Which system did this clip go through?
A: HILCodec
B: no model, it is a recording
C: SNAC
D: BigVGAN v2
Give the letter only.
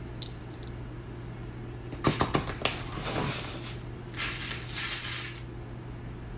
B